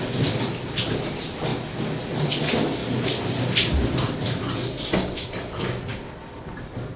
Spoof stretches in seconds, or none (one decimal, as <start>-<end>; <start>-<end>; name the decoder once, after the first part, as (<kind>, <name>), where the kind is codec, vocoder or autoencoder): none